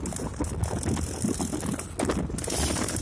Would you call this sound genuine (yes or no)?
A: yes